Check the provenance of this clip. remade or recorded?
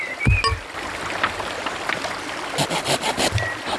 recorded